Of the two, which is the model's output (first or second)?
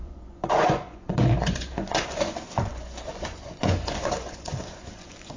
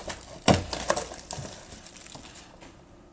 first